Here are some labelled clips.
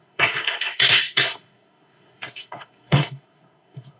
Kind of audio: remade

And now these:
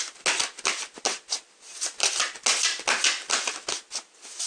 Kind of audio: recorded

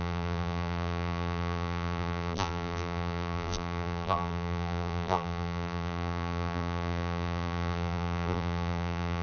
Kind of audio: remade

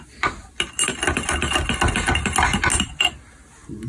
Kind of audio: recorded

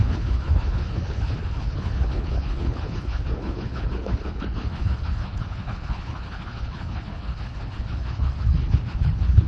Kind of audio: remade